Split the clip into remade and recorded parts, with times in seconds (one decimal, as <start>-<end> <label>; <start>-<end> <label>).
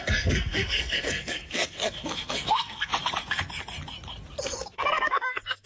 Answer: 0.0-2.9 remade; 2.9-4.4 recorded; 4.4-5.7 remade